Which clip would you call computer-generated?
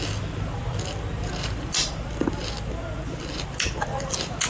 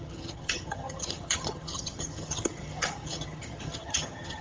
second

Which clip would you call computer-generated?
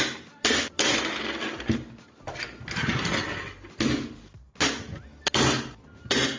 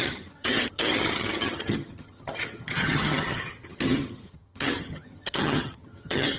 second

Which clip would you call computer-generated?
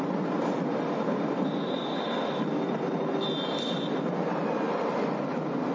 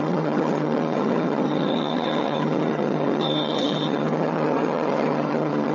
second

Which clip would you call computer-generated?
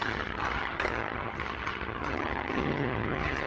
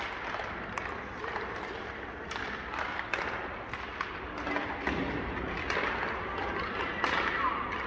first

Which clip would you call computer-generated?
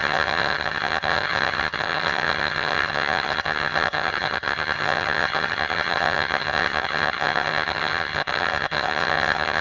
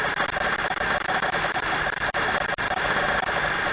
first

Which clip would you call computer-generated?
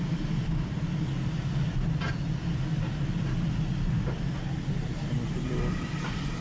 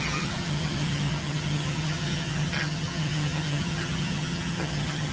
second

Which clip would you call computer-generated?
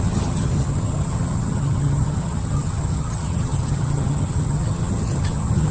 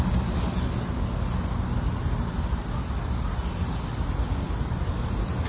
first